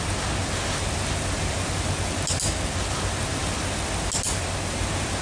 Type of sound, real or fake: real